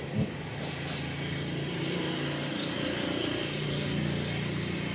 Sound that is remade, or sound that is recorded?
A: recorded